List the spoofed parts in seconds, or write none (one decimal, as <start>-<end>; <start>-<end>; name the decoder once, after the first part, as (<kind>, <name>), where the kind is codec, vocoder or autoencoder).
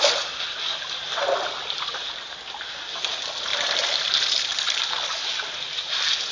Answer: 3.5-4.1 (vocoder, BigVGAN v2); 4.5-5.4